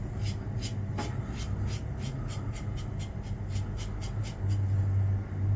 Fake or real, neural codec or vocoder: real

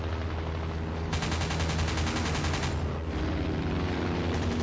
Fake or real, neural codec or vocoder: real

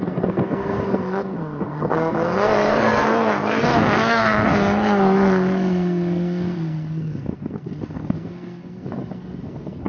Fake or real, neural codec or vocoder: fake, codec, SNAC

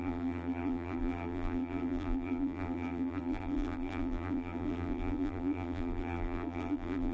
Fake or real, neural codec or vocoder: fake, vocoder, BigVGAN v2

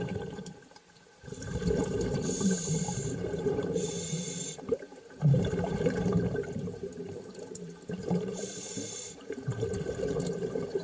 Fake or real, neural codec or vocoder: fake, vocoder, BigVGAN v2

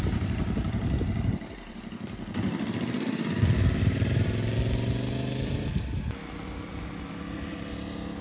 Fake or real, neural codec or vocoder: real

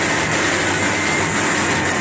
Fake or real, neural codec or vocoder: real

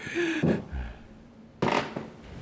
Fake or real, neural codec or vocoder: real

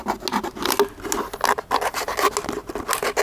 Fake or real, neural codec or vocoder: real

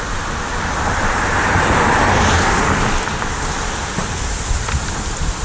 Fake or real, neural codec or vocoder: fake, vocoder, BigVGAN v2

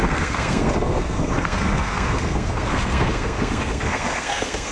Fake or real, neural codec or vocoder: fake, codec, SNAC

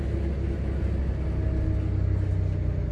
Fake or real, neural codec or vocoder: real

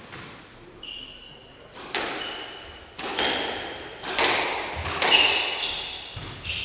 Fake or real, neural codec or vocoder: real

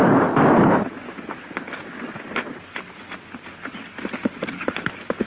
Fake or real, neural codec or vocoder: real